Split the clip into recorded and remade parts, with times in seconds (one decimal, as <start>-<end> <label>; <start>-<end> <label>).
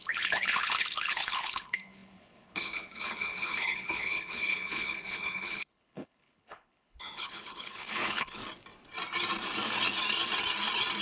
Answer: 0.0-8.4 remade; 8.4-11.0 recorded